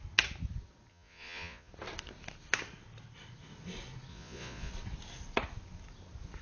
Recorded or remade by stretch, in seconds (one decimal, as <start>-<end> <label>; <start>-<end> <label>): 0.0-0.9 recorded; 0.9-1.7 remade; 1.7-4.1 recorded; 4.1-4.7 remade; 4.7-6.4 recorded

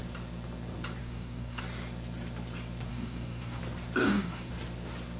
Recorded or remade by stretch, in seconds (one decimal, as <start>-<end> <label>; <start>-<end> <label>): 0.0-1.0 recorded; 1.0-1.6 remade; 1.6-2.9 recorded; 2.9-3.6 remade; 3.6-4.0 recorded; 4.0-4.5 remade; 4.5-5.2 recorded

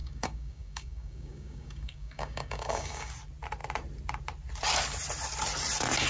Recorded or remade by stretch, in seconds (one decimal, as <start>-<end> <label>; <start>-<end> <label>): 0.0-3.1 remade; 3.1-6.1 recorded

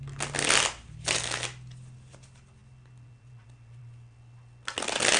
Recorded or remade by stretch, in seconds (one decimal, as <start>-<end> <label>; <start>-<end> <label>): 0.0-5.2 recorded